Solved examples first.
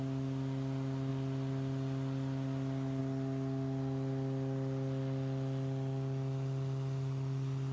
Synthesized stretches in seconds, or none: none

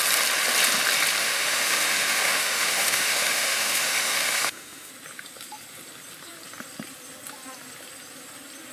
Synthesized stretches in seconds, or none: 1.2-4.9

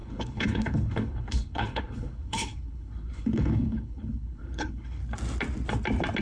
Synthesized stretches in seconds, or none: 0.0-5.0

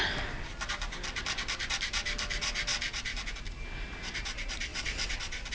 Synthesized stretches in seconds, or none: none

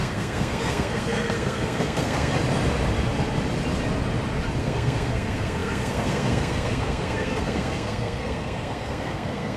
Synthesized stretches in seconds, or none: 0.0-2.3; 4.6-9.6

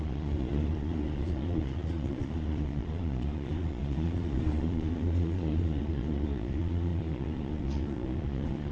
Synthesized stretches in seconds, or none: 0.0-8.7

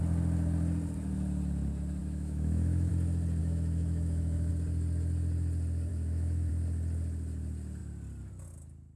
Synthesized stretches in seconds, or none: 2.0-2.9; 3.4-4.5; 5.9-6.5

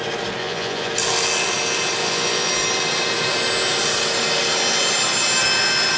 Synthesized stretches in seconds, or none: 0.4-0.9; 2.0-2.5